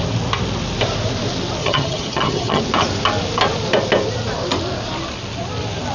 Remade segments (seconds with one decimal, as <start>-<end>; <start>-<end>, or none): 1.6-2.6